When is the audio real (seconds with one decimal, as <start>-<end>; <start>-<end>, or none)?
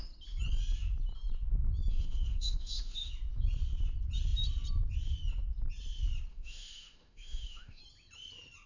0.0-1.9; 3.1-6.3; 7.8-8.7